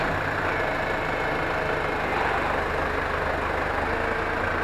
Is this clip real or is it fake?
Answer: real